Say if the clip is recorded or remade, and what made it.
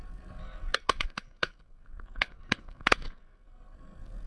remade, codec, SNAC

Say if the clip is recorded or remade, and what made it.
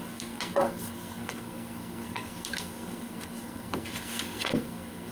remade, codec, SNAC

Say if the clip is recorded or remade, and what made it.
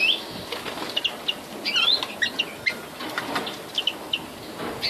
recorded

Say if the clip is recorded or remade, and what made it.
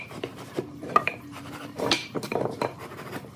remade, vocoder, BigVGAN v2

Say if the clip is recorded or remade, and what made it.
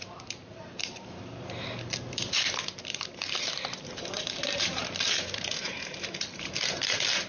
remade, vocoder, BigVGAN v2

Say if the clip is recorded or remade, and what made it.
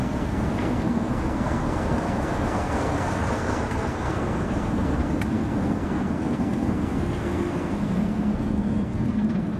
remade, codec, SNAC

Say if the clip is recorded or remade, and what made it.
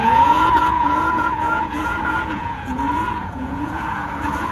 remade, vocoder, Vocos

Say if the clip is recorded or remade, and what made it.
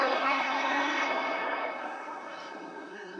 remade, codec, SNAC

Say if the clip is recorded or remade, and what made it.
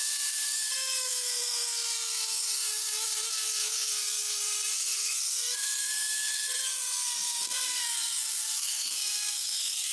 remade, codec, SNAC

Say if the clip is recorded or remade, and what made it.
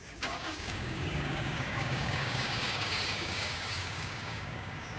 remade, codec, DAC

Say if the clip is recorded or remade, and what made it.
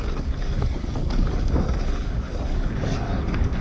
remade, codec, DAC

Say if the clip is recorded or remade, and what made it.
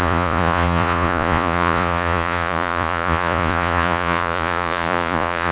remade, vocoder, Vocos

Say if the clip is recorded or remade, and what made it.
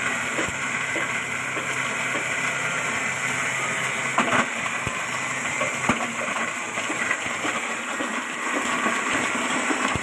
remade, vocoder, BigVGAN v2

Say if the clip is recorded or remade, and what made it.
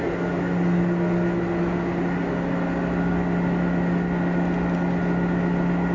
recorded